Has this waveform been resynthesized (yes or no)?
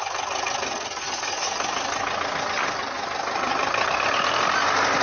no